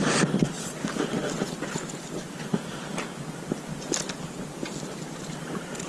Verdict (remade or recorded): recorded